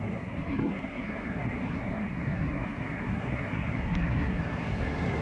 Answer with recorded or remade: remade